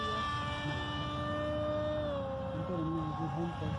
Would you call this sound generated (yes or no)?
no